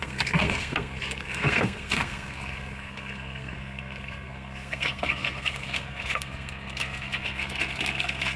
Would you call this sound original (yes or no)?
no